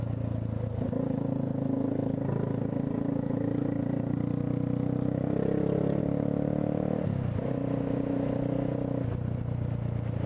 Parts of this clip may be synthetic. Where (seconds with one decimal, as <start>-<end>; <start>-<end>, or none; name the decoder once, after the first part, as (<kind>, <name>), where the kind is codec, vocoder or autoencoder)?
none

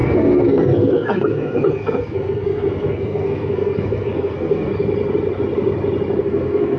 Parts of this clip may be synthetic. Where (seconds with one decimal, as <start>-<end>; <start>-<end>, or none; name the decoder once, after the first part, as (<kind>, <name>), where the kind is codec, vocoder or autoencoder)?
0.0-4.7 (codec, SNAC); 6.2-6.8

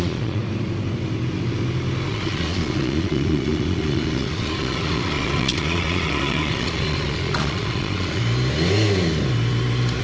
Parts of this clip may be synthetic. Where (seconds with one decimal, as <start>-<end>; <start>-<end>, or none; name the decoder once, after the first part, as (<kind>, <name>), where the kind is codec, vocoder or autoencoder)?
0.0-0.4 (vocoder, Vocos); 2.1-8.2

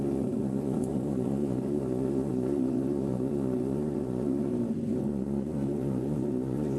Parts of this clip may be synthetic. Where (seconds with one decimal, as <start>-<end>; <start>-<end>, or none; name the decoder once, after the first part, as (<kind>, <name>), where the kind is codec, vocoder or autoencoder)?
0.0-4.5 (vocoder, Vocos); 5.1-6.8

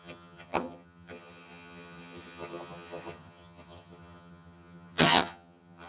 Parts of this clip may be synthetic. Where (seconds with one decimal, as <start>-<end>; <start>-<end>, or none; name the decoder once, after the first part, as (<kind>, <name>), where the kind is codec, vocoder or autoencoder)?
0.0-5.9 (vocoder, HiFi-GAN)

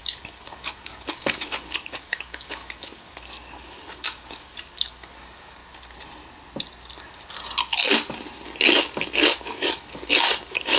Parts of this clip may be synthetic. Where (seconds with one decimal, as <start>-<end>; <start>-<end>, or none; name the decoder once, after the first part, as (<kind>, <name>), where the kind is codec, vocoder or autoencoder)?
0.0-5.6 (codec, DAC); 9.4-10.8

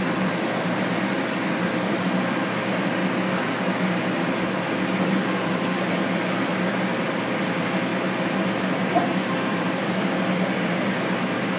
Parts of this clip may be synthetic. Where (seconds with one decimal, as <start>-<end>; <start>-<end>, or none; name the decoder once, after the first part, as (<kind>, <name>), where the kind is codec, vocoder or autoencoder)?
0.0-3.0 (vocoder, BigVGAN v2); 5.1-11.6

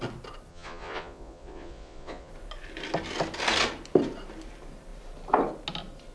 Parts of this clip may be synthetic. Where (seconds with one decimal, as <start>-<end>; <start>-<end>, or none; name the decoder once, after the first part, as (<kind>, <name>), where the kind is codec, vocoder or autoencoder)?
0.5-2.3 (vocoder, Vocos)